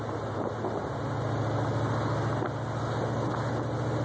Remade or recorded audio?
recorded